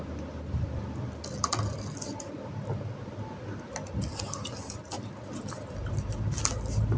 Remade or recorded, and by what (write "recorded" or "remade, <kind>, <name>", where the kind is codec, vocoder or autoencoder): recorded